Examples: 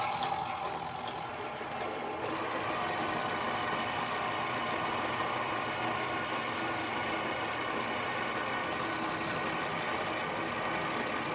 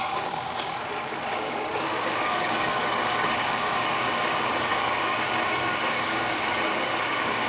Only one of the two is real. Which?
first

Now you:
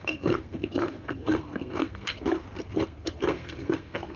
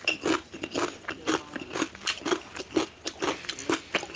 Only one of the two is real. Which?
second